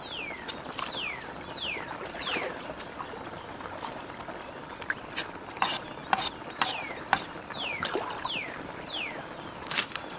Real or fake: real